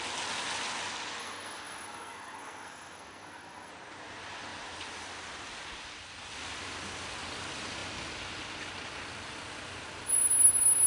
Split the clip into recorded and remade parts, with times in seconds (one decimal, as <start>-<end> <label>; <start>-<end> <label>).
0.0-1.2 recorded; 1.2-3.7 remade; 3.7-10.9 recorded